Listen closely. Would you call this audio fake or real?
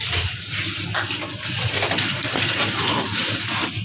real